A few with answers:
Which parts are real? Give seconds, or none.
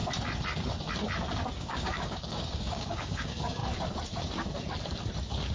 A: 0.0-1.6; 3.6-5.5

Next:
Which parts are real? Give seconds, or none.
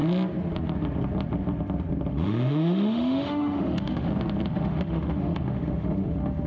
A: 0.0-2.1; 4.1-4.5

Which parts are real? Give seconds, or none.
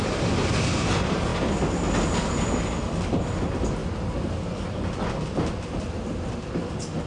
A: 0.0-7.1